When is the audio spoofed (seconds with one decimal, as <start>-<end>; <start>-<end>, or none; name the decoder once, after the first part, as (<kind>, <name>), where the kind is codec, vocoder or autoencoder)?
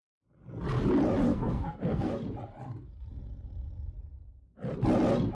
1.3-2.1 (codec, SNAC)